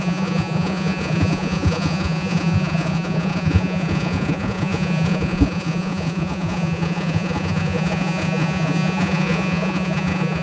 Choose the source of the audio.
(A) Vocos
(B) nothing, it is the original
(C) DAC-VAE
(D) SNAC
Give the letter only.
A